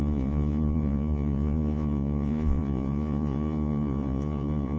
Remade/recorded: remade